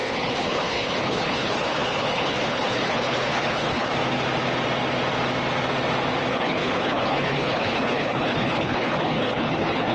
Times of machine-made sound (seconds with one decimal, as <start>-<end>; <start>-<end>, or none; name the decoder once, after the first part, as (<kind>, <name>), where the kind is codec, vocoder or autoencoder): 0.0-3.9 (codec, HILCodec); 6.3-9.9